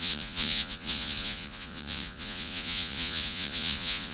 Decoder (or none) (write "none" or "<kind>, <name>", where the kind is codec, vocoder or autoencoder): vocoder, Vocos